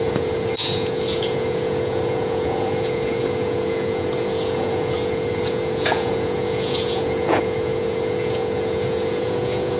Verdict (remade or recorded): remade